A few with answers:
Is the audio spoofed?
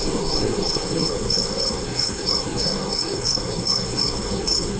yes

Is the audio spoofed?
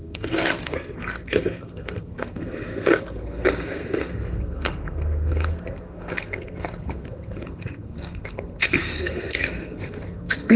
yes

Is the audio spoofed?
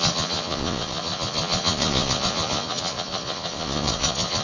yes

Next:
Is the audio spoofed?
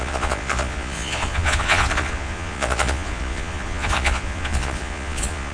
yes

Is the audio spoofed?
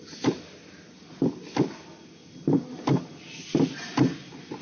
no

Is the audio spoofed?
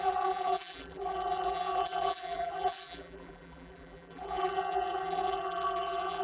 yes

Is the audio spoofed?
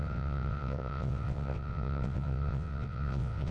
yes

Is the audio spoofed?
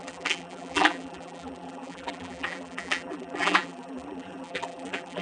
yes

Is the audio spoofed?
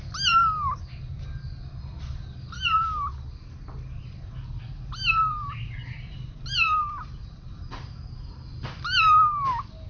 no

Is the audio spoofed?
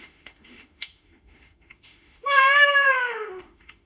yes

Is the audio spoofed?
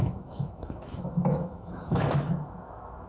yes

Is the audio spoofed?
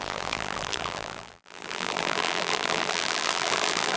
yes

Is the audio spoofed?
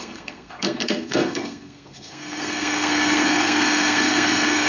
yes